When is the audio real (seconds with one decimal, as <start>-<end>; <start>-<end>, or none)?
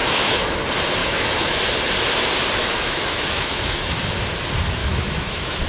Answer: 0.6-1.0; 1.6-2.6; 4.0-4.8